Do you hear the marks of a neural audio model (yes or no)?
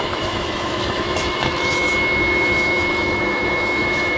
yes